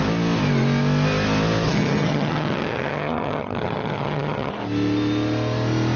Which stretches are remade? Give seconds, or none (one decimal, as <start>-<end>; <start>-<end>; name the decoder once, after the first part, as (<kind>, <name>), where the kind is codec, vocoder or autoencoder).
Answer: 1.7-4.5 (vocoder, HiFi-GAN)